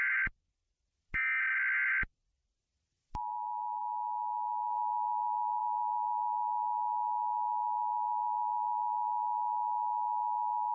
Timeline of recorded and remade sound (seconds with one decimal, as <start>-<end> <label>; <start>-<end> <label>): 0.0-10.7 recorded